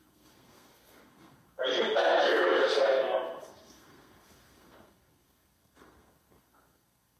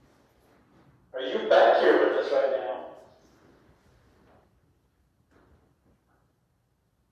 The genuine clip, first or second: second